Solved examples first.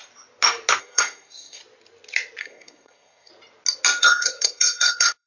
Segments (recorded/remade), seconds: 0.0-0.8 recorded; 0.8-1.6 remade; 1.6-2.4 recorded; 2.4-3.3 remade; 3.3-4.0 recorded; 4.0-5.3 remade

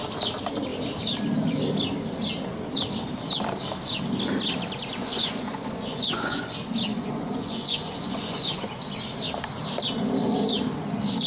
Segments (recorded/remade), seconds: 0.0-5.0 recorded; 5.0-6.5 remade; 6.5-6.9 recorded; 6.9-8.9 remade; 8.9-11.3 recorded

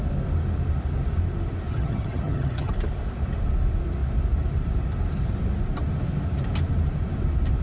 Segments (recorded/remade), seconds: 0.0-1.7 recorded; 1.7-2.7 remade; 2.7-7.6 recorded

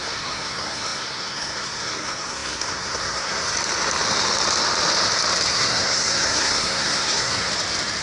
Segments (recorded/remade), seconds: 0.0-3.5 remade; 3.5-5.5 recorded; 5.5-7.5 remade; 7.5-8.0 recorded

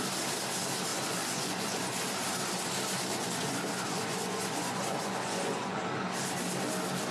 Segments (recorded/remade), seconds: 0.0-0.9 recorded; 0.9-2.0 remade; 2.0-3.1 recorded; 3.1-5.8 remade; 5.8-7.1 recorded